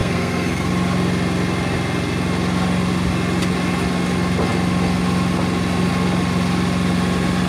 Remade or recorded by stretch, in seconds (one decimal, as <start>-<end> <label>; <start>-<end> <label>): 0.0-0.7 remade; 0.7-7.5 recorded